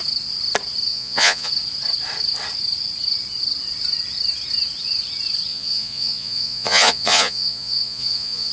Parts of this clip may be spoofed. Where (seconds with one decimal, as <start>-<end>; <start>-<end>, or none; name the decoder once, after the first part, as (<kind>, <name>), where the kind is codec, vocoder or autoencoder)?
0.9-1.5 (vocoder, Vocos); 5.5-8.5